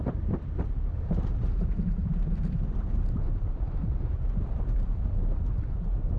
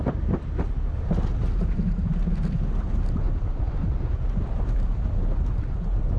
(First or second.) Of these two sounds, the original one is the second